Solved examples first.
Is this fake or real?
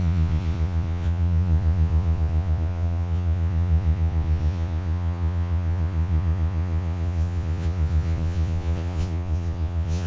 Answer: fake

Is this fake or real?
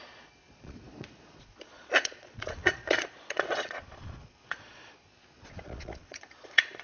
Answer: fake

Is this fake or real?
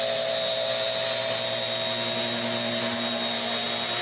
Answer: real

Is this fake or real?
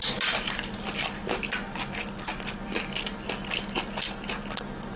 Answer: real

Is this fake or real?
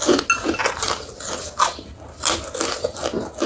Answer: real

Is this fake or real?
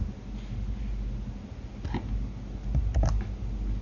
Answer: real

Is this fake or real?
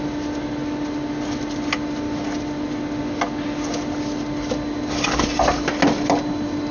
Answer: real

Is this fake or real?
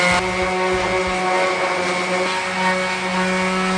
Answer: real